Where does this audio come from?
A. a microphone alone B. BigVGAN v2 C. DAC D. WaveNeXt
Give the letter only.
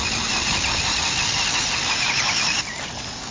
A